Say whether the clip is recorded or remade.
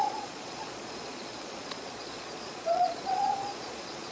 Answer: remade